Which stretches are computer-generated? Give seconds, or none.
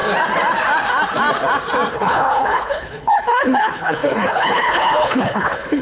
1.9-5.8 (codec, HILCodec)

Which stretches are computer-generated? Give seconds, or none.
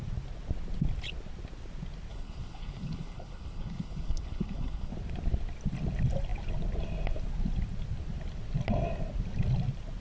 2.1-4.9 (codec, HILCodec)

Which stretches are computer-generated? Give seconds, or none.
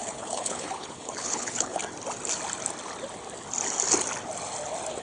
0.0-1.8 (codec, HILCodec)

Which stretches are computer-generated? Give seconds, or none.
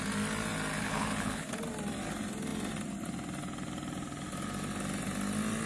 0.8-1.6 (codec, HILCodec)